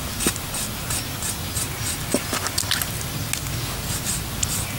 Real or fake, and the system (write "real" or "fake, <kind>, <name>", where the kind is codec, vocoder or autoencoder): real